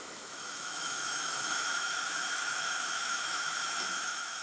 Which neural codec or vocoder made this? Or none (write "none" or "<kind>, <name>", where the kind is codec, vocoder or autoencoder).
autoencoder, DAC-VAE